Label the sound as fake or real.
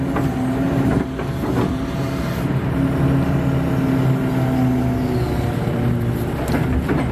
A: real